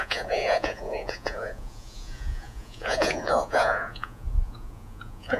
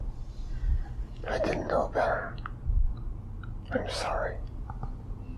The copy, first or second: first